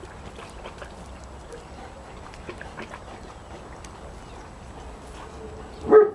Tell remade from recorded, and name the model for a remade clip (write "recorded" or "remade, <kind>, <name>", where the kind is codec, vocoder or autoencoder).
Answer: recorded